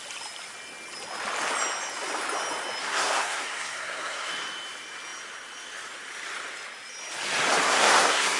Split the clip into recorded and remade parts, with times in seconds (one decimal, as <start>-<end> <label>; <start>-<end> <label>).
0.0-2.8 recorded; 2.8-4.3 remade; 4.3-7.6 recorded; 7.6-8.4 remade